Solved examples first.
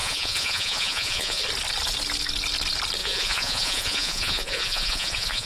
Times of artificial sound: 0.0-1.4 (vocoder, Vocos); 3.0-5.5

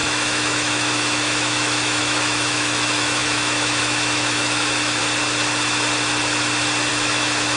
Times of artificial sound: 0.0-5.0 (autoencoder, DAC-VAE); 6.9-7.6

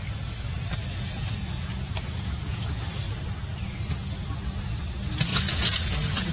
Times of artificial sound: 0.8-2.8 (vocoder, Vocos); 5.3-6.3